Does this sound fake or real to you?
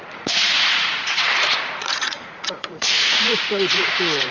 fake